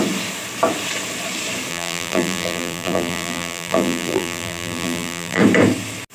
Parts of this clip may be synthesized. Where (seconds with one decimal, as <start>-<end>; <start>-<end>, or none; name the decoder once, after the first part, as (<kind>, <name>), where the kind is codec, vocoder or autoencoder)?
1.7-5.4 (vocoder, BigVGAN v2)